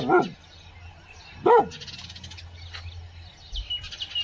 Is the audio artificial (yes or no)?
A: no